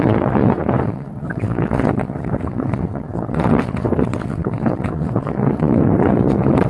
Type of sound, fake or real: fake